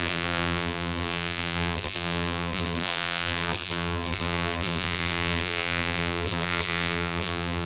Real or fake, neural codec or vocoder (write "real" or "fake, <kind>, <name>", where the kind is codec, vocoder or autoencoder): fake, vocoder, BigVGAN v2